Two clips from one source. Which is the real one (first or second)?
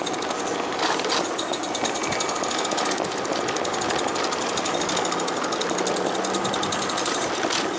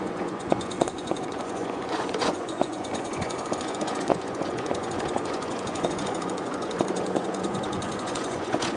first